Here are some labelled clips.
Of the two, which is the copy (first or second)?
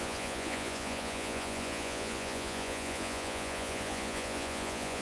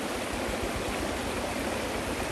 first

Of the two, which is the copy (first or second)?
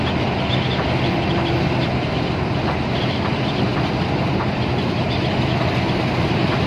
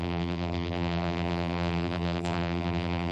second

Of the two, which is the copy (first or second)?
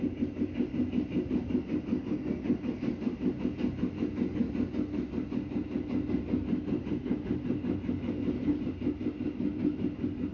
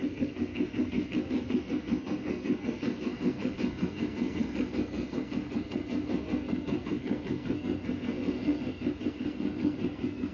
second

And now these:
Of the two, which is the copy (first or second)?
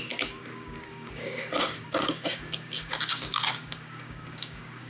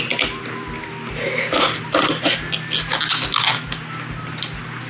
first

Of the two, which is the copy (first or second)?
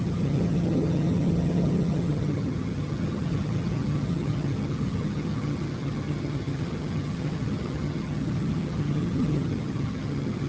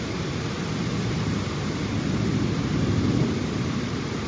first